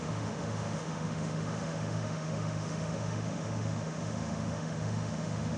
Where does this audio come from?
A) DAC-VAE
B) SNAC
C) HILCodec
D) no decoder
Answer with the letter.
A